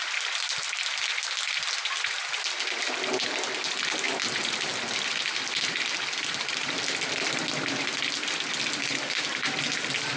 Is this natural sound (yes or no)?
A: yes